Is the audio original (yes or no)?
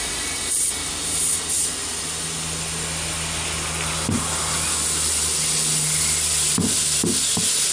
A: yes